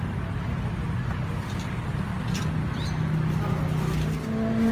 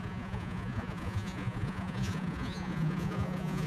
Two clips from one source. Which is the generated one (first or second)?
second